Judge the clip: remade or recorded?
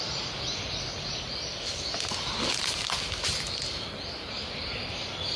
recorded